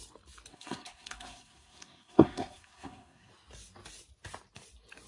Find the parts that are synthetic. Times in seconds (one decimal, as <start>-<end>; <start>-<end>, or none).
0.5-3.3